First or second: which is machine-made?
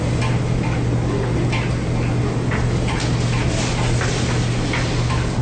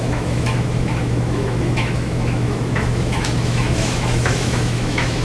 second